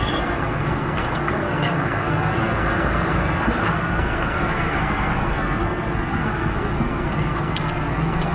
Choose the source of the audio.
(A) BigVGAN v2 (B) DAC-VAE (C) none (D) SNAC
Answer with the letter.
D